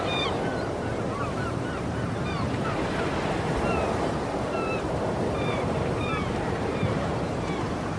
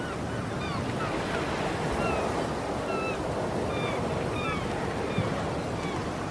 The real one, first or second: second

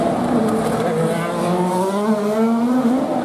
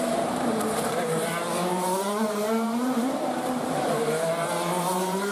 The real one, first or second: first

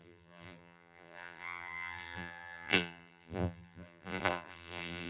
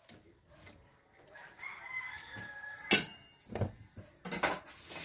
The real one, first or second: second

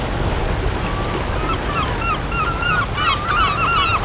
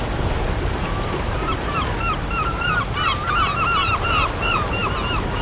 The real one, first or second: first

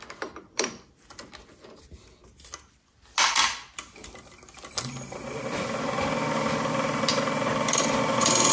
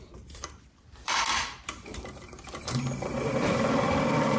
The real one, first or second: first